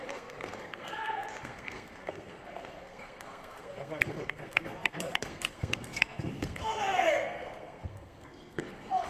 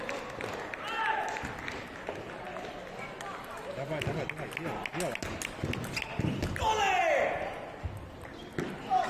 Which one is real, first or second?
second